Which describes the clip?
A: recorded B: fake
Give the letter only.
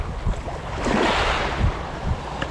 A